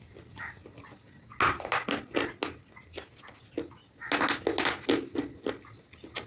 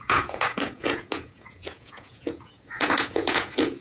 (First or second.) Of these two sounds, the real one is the first